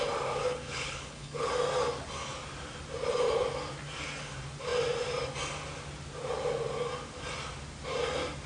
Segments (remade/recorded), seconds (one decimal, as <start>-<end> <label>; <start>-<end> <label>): 0.0-0.4 recorded; 0.4-1.5 remade; 1.5-8.5 recorded